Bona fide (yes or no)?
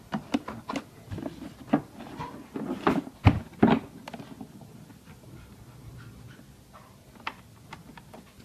yes